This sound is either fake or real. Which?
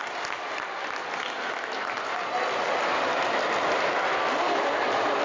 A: real